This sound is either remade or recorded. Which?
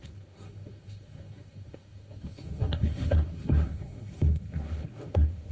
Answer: remade